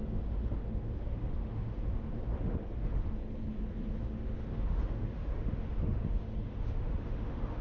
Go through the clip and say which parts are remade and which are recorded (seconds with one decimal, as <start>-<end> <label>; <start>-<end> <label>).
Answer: 0.0-3.2 remade; 3.2-4.0 recorded; 4.0-7.6 remade

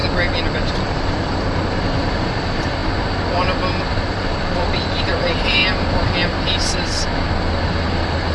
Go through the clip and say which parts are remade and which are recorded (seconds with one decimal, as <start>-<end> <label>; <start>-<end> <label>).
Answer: 0.0-0.6 recorded; 0.6-2.8 remade; 2.8-4.1 recorded; 4.1-5.6 remade; 5.6-7.6 recorded; 7.6-8.3 remade

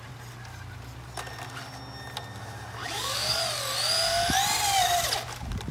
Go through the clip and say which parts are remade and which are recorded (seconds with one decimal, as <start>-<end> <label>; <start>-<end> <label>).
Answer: 0.0-2.8 recorded; 2.8-3.4 remade; 3.4-5.7 recorded

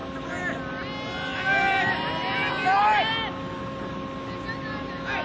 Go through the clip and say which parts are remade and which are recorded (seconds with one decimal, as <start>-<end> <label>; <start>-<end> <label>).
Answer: 0.0-5.2 recorded

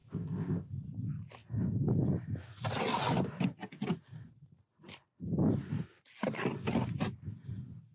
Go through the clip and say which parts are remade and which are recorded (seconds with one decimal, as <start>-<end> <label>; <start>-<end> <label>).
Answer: 0.0-0.7 remade; 0.7-7.9 recorded